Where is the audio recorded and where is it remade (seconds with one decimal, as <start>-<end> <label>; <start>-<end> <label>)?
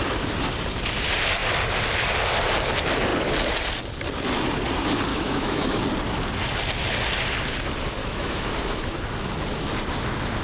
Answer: 0.0-5.1 recorded; 5.1-5.8 remade; 5.8-8.0 recorded; 8.0-8.5 remade; 8.5-10.4 recorded